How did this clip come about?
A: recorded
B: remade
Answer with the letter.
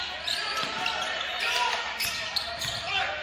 A